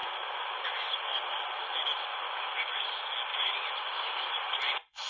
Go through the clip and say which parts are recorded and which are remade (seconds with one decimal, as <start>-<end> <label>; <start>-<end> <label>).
0.0-1.6 remade; 1.6-3.3 recorded; 3.3-4.4 remade; 4.4-5.1 recorded